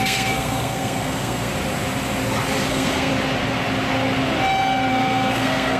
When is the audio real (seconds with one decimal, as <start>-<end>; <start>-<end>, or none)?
1.5-2.7; 3.1-4.9